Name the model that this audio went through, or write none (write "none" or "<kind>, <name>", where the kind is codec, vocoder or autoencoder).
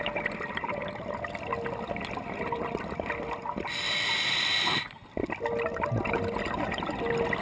none